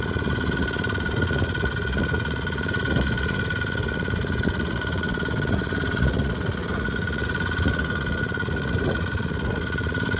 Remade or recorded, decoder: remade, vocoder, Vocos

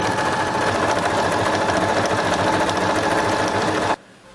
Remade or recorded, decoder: recorded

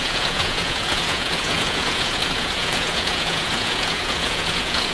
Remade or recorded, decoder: remade, vocoder, Vocos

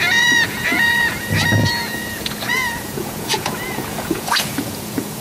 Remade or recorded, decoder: remade, vocoder, Vocos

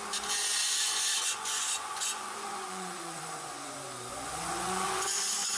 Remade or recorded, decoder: remade, vocoder, Vocos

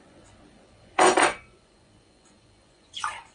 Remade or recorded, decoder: remade, vocoder, Vocos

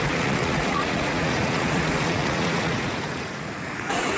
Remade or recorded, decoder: remade, vocoder, Vocos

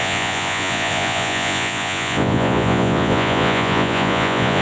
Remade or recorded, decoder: remade, vocoder, Vocos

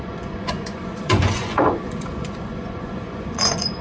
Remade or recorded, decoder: remade, vocoder, Vocos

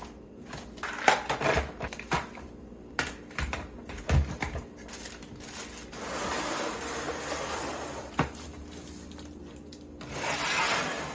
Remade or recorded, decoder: recorded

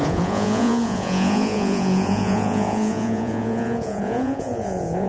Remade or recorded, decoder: remade, vocoder, Vocos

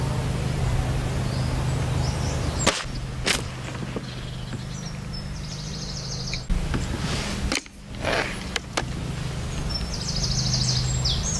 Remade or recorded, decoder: recorded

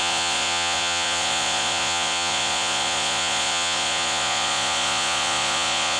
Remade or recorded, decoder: remade, vocoder, Vocos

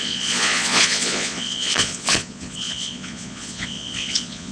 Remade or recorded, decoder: remade, vocoder, Vocos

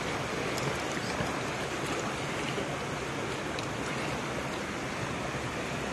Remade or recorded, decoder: recorded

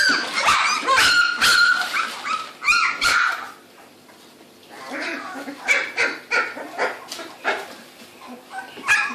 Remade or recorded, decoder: recorded